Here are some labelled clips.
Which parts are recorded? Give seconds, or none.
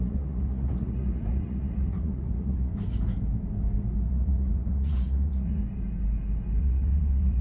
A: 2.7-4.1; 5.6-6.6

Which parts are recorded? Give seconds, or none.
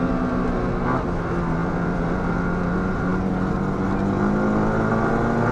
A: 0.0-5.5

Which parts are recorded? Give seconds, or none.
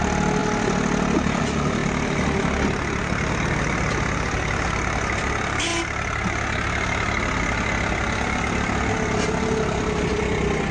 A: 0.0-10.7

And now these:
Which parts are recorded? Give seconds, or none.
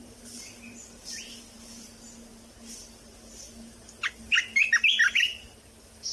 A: 0.0-6.1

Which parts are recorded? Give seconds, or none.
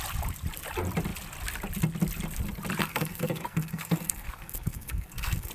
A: 0.0-2.8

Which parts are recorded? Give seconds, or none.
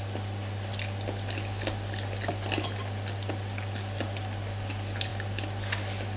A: 0.0-6.2